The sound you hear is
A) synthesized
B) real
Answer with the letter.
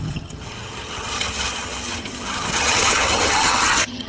A